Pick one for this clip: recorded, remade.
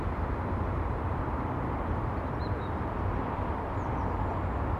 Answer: remade